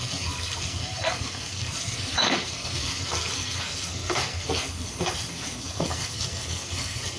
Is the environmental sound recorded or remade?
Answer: remade